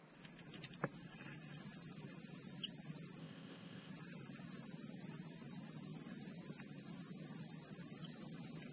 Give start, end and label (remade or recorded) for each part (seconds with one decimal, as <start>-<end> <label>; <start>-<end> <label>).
0.0-3.2 recorded; 3.2-3.9 remade; 3.9-8.7 recorded